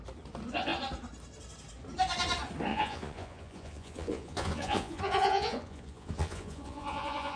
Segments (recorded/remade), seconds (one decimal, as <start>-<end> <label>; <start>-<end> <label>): 0.0-2.7 recorded; 2.7-7.4 remade

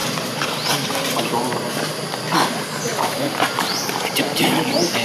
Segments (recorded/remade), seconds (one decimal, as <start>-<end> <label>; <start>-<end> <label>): 0.0-1.4 remade; 1.4-2.9 recorded; 2.9-4.5 remade; 4.5-5.0 recorded

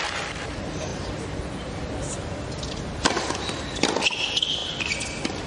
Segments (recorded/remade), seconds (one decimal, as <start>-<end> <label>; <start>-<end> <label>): 0.0-5.5 recorded

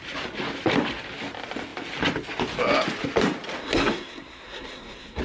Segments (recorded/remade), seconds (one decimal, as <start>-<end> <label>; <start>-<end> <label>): 0.0-3.6 recorded; 3.6-5.2 remade